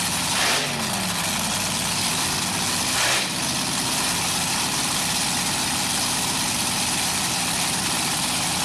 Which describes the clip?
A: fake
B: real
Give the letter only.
B